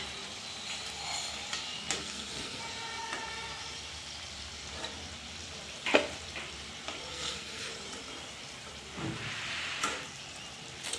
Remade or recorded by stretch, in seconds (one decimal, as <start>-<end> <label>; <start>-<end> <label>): 0.0-2.0 recorded; 2.0-2.6 remade; 2.6-7.1 recorded; 7.1-7.7 remade; 7.7-11.0 recorded